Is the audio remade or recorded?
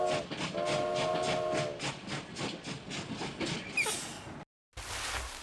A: recorded